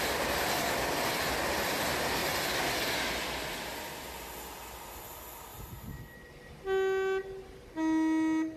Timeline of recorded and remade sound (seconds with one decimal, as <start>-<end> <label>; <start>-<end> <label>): 0.0-8.6 recorded